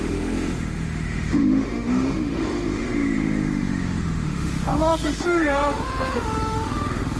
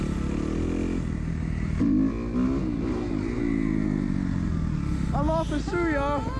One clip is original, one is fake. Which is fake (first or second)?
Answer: first